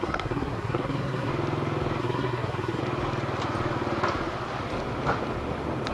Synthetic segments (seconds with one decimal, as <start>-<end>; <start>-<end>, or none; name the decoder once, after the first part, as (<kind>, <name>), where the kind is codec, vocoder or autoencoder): 0.0-1.3 (codec, SNAC); 2.0-2.8